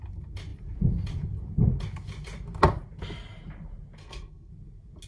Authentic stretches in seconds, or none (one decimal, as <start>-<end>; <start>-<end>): 0.0-4.0; 4.5-5.1